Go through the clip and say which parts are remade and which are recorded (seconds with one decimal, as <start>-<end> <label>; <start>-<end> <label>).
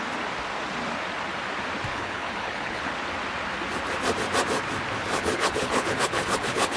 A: 0.0-1.9 recorded; 1.9-2.9 remade; 2.9-5.0 recorded; 5.0-6.8 remade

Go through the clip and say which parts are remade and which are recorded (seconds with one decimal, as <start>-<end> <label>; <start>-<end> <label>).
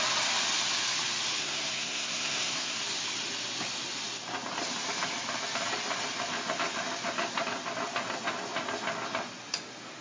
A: 0.0-1.4 recorded; 1.4-2.8 remade; 2.8-10.0 recorded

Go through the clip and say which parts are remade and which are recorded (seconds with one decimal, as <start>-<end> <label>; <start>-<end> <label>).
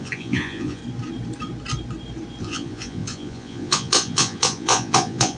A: 0.0-0.8 remade; 0.8-2.4 recorded; 2.4-5.4 remade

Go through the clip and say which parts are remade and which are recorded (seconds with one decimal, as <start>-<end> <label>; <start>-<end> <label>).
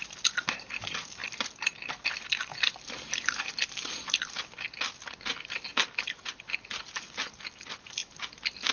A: 0.0-8.7 recorded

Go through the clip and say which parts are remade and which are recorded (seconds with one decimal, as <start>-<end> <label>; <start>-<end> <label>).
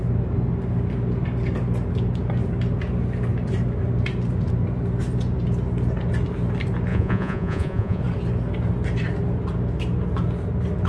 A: 0.0-6.9 recorded; 6.9-8.0 remade; 8.0-10.9 recorded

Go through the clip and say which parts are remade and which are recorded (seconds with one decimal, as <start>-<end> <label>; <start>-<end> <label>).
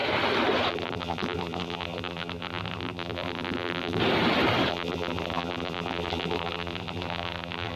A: 0.0-0.7 recorded; 0.7-4.0 remade; 4.0-4.7 recorded; 4.7-7.8 remade